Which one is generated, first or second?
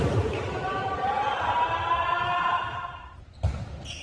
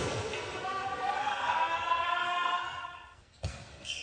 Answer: second